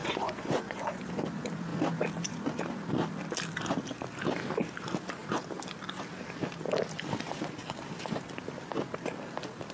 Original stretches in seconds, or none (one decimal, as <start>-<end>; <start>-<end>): 1.0-9.7